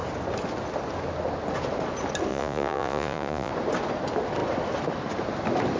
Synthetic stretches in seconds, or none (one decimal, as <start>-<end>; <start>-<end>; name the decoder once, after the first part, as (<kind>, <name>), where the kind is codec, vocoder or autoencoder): 2.3-3.5 (vocoder, Vocos)